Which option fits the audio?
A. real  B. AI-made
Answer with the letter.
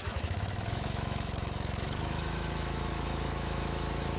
B